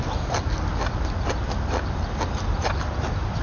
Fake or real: real